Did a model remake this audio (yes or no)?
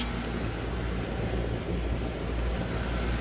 no